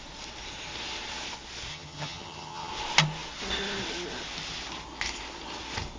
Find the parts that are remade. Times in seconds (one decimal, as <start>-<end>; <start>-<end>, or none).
1.7-2.7